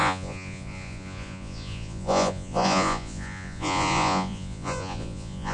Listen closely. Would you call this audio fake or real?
fake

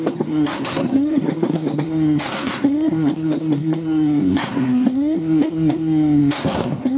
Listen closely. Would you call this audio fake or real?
fake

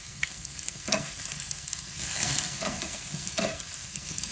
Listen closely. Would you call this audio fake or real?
fake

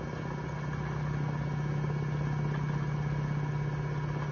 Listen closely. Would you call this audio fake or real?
real